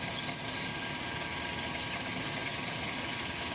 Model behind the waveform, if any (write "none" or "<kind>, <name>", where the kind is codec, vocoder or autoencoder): none